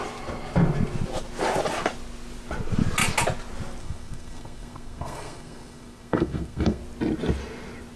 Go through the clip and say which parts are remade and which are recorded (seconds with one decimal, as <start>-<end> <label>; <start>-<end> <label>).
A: 0.0-3.8 recorded; 3.8-6.8 remade; 6.8-8.0 recorded